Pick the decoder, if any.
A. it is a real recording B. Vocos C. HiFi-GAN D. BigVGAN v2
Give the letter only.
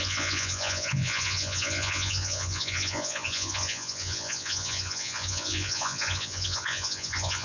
B